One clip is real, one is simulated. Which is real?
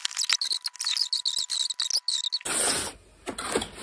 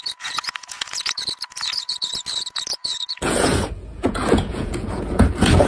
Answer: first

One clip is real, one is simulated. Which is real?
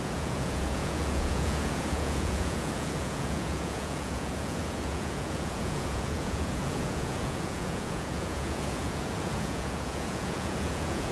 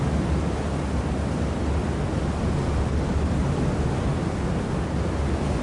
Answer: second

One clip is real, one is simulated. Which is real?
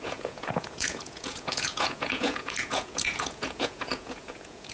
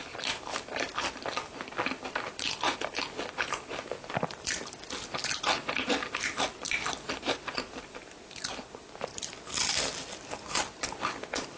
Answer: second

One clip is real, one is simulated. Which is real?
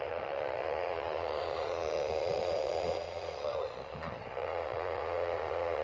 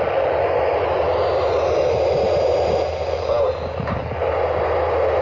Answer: second